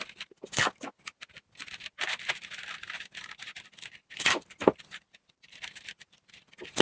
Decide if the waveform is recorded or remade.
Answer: recorded